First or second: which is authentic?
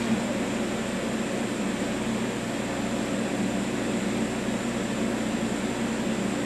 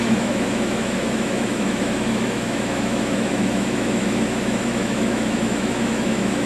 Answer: first